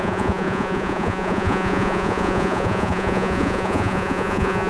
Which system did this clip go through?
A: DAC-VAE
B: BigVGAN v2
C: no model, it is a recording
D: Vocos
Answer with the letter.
D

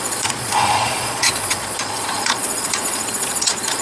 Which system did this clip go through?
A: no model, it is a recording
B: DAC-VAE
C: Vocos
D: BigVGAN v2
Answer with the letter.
C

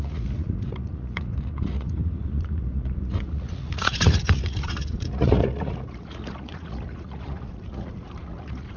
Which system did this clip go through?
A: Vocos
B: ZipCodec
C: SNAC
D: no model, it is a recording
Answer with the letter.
A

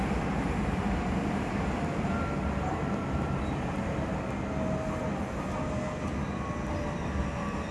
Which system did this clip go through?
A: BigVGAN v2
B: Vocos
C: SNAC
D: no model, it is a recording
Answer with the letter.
D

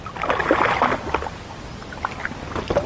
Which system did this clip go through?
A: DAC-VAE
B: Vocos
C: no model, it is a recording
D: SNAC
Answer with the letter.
C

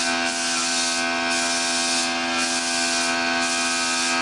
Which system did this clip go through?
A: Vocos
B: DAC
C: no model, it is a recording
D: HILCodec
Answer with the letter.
C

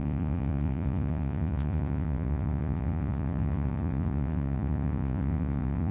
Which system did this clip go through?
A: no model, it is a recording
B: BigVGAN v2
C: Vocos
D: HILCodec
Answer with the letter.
C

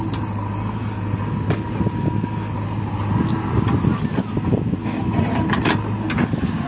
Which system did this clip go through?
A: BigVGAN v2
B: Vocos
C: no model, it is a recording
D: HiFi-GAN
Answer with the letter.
C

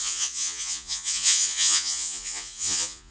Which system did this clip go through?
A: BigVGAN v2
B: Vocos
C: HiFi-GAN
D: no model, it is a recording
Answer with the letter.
B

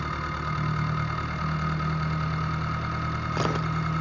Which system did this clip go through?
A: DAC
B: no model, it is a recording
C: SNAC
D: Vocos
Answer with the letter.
B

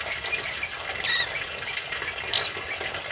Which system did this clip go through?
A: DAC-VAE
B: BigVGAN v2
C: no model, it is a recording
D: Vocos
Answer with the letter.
C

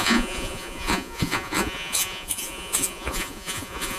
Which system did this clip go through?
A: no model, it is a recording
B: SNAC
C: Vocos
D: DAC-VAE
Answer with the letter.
C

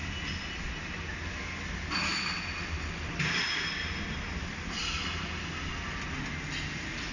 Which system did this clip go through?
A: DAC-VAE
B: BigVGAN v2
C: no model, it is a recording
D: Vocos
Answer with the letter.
C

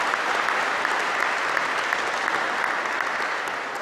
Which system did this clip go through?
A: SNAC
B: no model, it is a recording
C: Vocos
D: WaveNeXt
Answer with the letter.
B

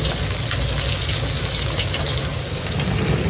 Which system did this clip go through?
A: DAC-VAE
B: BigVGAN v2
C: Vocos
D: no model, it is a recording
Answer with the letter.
D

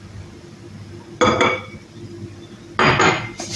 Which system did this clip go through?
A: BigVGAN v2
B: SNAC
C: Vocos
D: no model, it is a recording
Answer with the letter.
D